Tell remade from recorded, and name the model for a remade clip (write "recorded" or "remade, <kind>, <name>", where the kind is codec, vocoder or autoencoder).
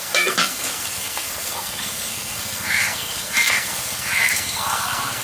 remade, codec, SNAC